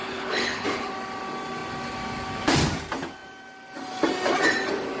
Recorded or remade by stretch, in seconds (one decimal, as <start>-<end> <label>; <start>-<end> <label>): 0.0-0.9 remade; 0.9-5.0 recorded